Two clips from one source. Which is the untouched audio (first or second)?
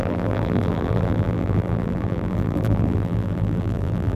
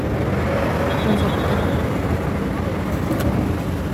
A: second